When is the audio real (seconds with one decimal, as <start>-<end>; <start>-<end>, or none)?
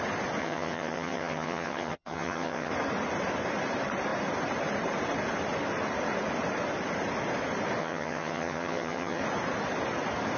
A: 0.0-0.4; 2.7-7.8; 9.2-10.4